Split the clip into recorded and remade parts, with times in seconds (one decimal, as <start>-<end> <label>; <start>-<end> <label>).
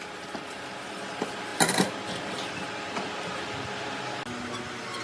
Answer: 0.0-5.0 recorded